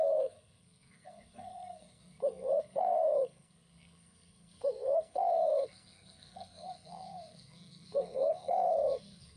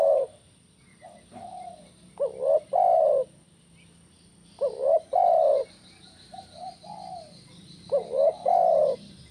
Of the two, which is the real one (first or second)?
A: second